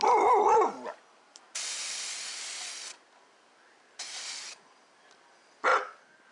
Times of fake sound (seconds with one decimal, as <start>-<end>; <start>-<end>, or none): none